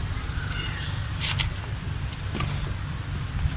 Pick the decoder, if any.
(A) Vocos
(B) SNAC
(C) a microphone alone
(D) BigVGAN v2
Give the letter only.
C